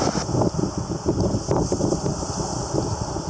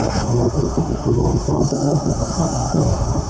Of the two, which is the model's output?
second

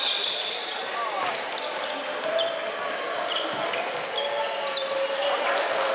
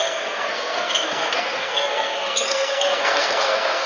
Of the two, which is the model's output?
second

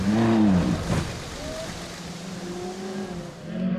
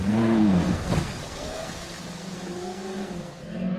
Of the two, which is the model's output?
second